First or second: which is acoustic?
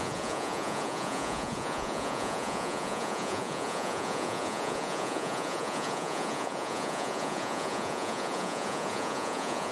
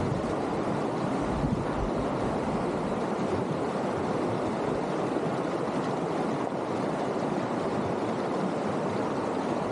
second